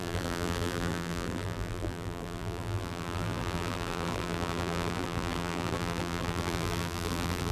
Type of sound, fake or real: fake